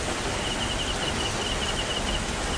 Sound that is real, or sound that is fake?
real